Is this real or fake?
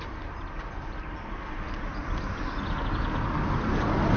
real